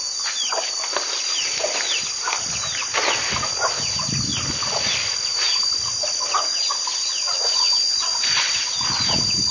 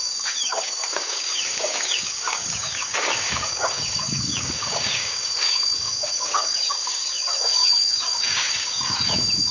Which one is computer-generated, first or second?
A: second